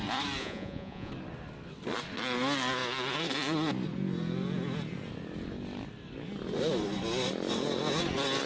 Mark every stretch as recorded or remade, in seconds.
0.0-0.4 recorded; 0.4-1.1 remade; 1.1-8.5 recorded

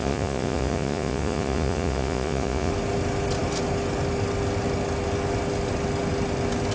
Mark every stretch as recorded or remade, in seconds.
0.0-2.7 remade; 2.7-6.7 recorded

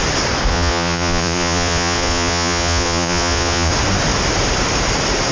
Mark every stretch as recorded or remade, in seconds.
0.0-0.5 recorded; 0.5-3.7 remade; 3.7-5.3 recorded